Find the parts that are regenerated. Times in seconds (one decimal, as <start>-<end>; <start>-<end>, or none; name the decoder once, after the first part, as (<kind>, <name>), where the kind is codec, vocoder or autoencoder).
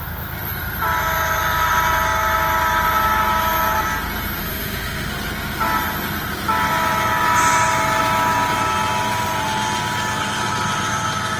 4.4-5.1 (autoencoder, DAC-VAE)